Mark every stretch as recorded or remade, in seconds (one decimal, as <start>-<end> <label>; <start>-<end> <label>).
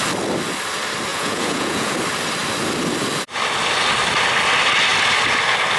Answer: 0.0-1.1 recorded; 1.1-1.9 remade; 1.9-5.8 recorded